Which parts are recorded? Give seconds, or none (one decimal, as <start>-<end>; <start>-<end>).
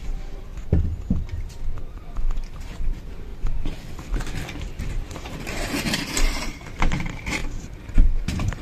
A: 0.5-1.4; 3.3-4.6